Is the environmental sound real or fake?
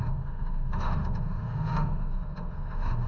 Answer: fake